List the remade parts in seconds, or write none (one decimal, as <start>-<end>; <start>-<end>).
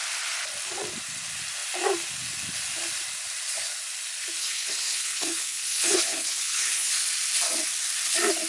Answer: 4.4-6.9